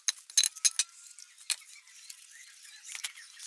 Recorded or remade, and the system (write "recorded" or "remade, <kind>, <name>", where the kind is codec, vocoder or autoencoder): recorded